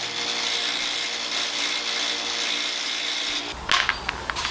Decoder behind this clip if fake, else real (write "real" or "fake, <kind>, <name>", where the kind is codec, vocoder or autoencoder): real